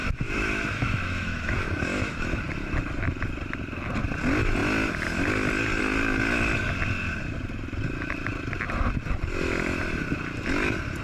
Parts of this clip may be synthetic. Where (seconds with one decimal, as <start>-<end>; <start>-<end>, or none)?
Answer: 0.0-2.4